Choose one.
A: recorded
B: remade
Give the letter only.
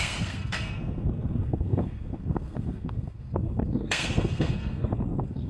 B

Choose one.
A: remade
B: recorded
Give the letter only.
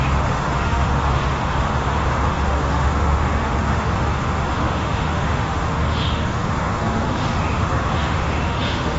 A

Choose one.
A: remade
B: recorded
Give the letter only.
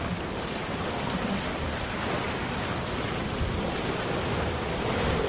B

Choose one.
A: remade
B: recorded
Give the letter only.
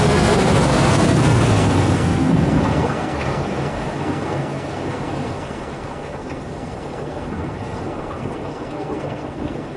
A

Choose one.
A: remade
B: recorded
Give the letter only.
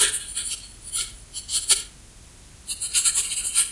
B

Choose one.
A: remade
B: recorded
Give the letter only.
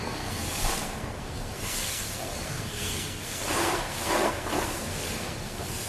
A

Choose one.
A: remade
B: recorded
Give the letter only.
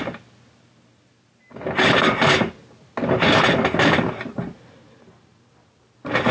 B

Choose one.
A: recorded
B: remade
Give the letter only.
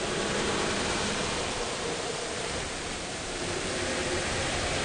B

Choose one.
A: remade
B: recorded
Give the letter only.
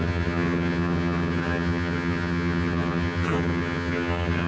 A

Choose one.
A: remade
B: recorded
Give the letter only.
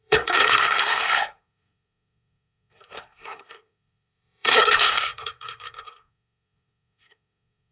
A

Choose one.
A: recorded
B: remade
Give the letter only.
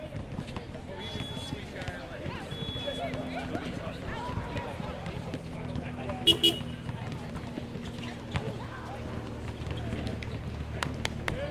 A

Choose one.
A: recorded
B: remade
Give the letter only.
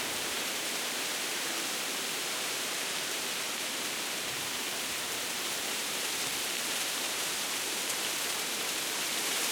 B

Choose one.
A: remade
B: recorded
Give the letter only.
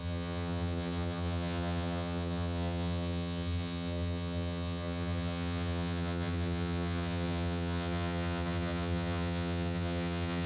A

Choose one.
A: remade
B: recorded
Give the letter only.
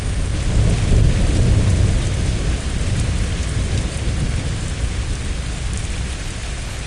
B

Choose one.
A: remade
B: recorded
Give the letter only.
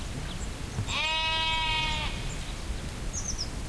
B